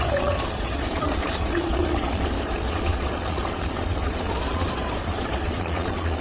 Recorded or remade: remade